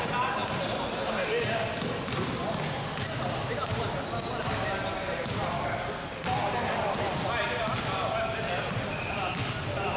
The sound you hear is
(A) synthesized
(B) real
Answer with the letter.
B